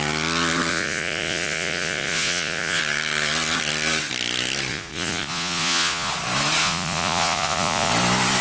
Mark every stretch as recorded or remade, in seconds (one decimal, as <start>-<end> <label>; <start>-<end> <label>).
0.0-0.7 recorded; 0.7-2.8 remade; 2.8-4.7 recorded; 4.7-6.1 remade; 6.1-6.6 recorded; 6.6-7.9 remade; 7.9-8.4 recorded